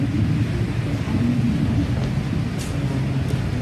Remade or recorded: recorded